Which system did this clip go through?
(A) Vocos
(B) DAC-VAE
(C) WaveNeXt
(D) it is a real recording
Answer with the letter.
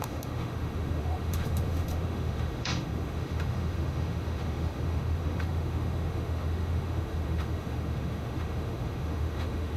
B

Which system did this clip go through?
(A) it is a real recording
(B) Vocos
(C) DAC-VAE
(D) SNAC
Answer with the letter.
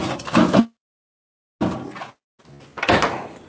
A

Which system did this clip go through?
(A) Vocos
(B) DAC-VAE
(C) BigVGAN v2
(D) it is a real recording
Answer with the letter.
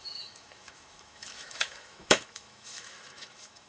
B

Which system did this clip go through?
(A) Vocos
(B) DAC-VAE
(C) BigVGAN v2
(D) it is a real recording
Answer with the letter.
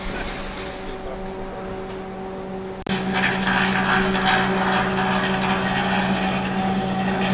D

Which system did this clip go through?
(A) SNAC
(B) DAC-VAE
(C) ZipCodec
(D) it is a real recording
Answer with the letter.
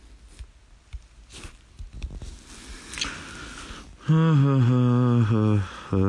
D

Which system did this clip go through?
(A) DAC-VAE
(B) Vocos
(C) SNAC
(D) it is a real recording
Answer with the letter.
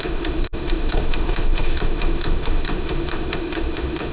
A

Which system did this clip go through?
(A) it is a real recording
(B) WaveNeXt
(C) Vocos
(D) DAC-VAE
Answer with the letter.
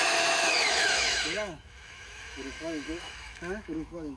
D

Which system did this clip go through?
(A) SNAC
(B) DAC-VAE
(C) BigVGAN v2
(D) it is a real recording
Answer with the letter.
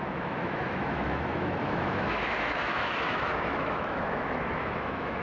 B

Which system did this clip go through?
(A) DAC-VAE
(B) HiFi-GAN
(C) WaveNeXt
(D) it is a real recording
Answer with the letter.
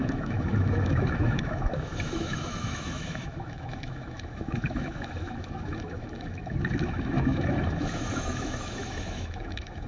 A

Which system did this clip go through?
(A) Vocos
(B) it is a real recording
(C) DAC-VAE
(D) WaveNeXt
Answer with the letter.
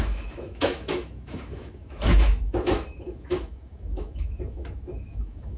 C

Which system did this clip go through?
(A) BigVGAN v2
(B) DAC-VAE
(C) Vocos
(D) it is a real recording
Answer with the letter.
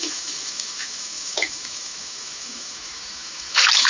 B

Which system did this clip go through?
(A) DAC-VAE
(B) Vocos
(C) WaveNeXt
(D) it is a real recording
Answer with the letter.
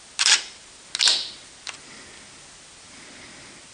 D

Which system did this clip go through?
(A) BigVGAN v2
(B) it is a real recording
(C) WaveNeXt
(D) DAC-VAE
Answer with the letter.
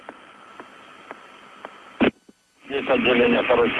B